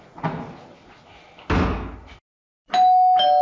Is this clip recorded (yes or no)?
yes